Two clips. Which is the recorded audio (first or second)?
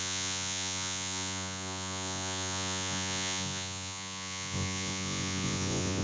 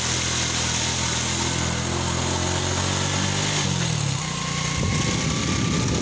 second